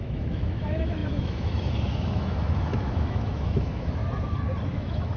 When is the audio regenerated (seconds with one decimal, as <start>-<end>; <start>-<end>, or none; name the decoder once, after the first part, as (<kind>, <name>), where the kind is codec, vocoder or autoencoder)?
0.0-4.0 (autoencoder, DAC-VAE); 4.7-5.2